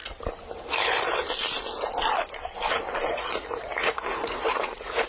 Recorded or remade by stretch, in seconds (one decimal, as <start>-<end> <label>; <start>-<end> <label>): 0.0-3.1 recorded; 3.1-5.1 remade